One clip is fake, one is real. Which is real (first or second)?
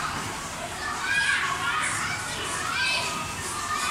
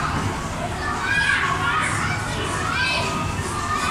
second